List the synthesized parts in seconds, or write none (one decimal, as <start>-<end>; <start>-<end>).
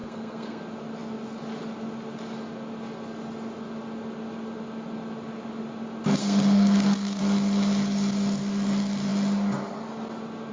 0.0-0.6; 6.2-7.2